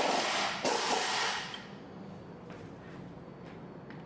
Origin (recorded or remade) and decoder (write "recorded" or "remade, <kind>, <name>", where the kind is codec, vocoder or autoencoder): recorded